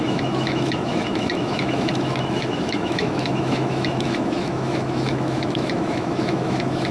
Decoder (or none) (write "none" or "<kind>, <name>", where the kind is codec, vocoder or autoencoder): autoencoder, DAC-VAE